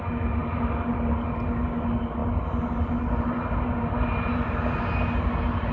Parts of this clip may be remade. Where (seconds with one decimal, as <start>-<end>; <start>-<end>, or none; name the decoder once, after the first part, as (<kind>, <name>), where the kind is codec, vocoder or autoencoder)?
none